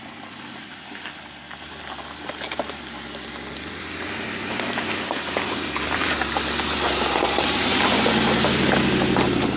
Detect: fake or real real